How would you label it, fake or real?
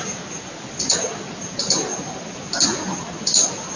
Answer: real